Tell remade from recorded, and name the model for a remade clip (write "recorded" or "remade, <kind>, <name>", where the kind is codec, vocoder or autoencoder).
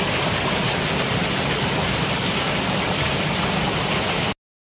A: recorded